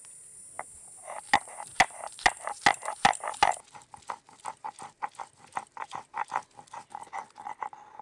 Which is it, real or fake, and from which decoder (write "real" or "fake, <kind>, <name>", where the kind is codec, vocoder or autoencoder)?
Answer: real